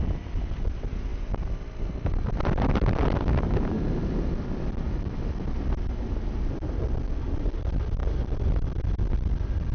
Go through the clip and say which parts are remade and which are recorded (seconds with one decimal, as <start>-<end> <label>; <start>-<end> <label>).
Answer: 0.0-9.7 recorded